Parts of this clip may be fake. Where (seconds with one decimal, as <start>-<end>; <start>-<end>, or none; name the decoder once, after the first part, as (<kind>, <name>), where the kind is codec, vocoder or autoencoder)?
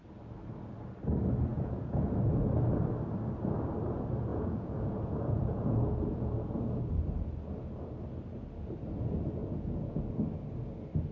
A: 1.5-2.3 (vocoder, Vocos); 4.3-6.8; 9.4-10.1